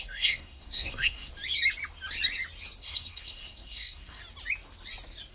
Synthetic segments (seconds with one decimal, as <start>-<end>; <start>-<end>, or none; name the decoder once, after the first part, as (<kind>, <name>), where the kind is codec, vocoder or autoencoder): 0.0-1.3 (codec, SNAC); 2.8-4.2